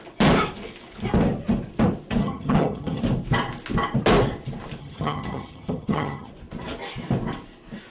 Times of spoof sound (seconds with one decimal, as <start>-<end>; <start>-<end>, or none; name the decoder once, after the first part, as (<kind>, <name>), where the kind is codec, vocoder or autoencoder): 2.2-3.0 (vocoder, HiFi-GAN); 4.8-6.3